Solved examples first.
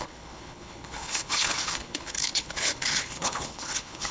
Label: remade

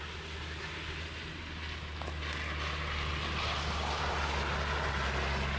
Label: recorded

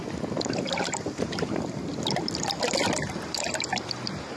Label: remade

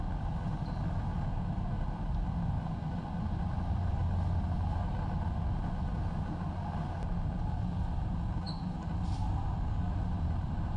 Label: recorded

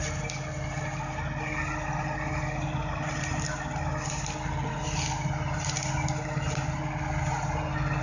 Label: recorded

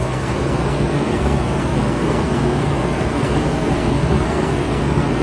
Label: remade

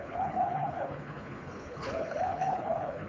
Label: remade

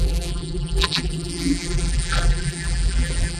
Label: remade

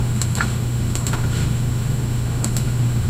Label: remade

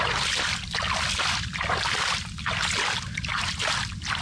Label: recorded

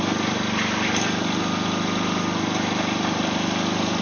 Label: recorded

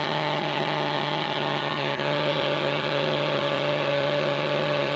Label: remade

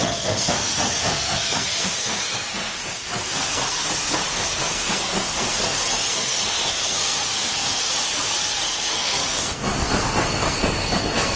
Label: remade